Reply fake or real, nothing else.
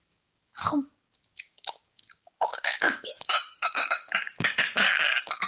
fake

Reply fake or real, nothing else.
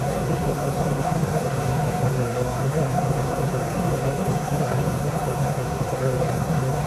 fake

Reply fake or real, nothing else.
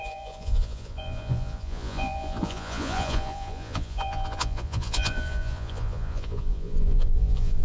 fake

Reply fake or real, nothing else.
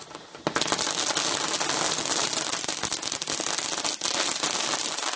real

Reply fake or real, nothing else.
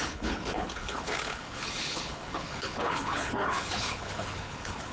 fake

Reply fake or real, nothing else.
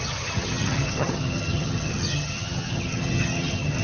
fake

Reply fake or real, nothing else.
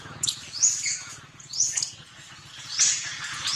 fake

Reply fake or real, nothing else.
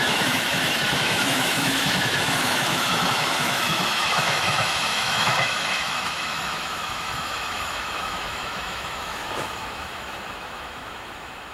fake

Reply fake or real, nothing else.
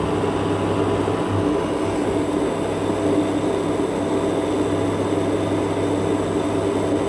real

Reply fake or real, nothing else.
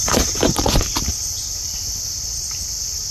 fake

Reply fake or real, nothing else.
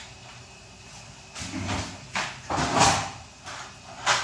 fake